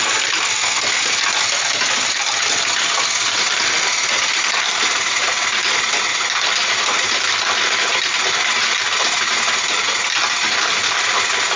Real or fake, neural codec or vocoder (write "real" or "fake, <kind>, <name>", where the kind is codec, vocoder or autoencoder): real